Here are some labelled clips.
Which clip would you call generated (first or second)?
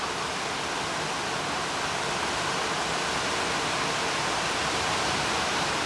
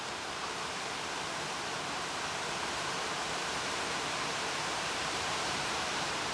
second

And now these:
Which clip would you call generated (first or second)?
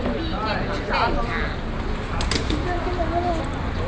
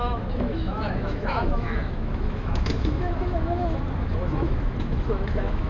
second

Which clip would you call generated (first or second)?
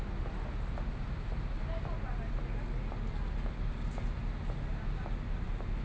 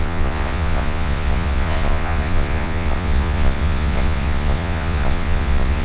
second